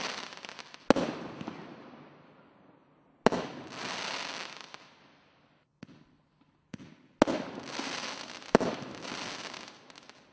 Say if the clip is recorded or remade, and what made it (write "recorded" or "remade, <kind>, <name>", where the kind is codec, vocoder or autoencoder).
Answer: recorded